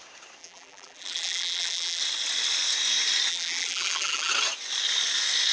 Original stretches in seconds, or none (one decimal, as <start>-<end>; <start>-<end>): 0.0-0.4; 2.0-3.3; 4.3-5.5

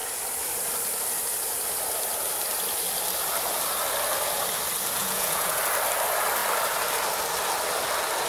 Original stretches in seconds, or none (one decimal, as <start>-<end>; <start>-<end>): 0.0-5.0; 5.6-8.3

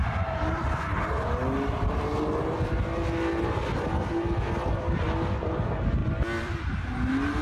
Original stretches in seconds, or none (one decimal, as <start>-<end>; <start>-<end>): 0.0-6.0; 6.5-7.4